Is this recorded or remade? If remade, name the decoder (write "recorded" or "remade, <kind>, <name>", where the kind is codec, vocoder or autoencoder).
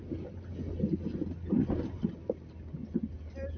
recorded